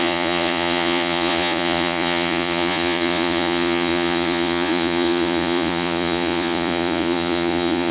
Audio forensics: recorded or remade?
remade